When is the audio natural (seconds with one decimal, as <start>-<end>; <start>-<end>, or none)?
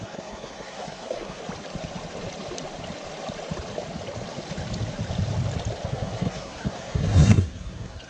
1.4-5.9